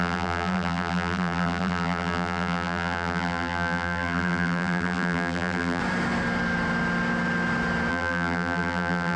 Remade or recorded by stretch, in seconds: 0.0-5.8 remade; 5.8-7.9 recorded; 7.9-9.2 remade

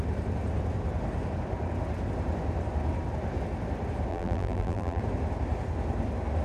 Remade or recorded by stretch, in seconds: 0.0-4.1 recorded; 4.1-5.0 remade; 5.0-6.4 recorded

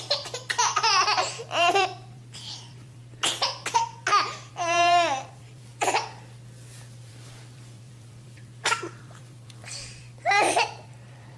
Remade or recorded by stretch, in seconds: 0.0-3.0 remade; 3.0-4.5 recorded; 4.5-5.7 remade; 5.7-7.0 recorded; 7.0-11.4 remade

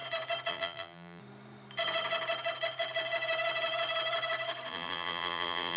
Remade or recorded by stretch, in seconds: 0.0-0.5 recorded; 0.5-1.2 remade; 1.2-4.7 recorded; 4.7-5.8 remade

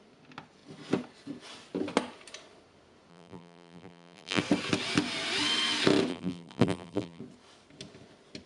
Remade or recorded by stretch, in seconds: 0.0-3.1 recorded; 3.1-4.4 remade; 4.4-6.1 recorded; 6.1-7.2 remade; 7.2-8.5 recorded

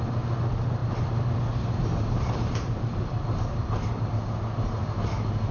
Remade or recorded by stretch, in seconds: 0.0-0.8 recorded; 0.8-4.1 remade; 4.1-5.5 recorded